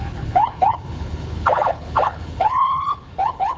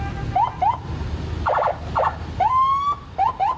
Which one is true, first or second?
second